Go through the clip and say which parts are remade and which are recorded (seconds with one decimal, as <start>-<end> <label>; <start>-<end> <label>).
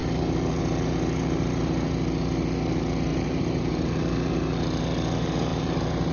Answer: 0.0-3.1 recorded; 3.1-4.0 remade; 4.0-5.5 recorded; 5.5-6.1 remade